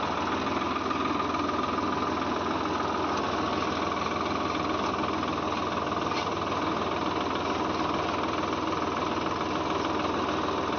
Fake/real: real